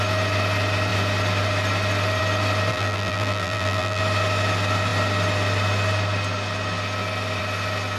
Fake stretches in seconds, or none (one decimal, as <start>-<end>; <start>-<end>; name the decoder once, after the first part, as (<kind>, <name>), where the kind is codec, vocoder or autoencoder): 2.7-4.0 (vocoder, BigVGAN v2)